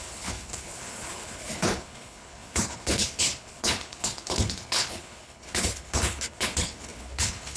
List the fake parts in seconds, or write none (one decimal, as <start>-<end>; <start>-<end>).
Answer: 0.0-7.6